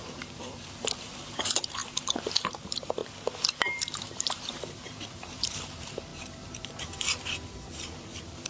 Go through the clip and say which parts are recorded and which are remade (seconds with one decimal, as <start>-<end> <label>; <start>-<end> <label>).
0.0-1.8 remade; 1.8-2.5 recorded; 2.5-3.0 remade; 3.0-3.6 recorded; 3.6-8.5 remade